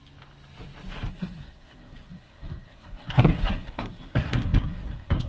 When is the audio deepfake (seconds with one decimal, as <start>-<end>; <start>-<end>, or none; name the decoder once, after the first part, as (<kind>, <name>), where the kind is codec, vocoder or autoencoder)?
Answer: 1.1-5.3 (codec, SNAC)